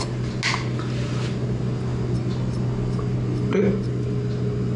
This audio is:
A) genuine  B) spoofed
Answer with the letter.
A